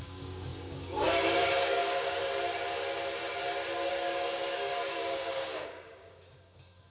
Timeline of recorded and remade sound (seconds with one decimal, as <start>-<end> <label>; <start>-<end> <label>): 0.0-2.2 remade; 2.2-3.9 recorded; 3.9-6.9 remade